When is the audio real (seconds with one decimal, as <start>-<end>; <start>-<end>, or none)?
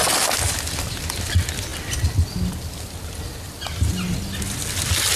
0.0-5.2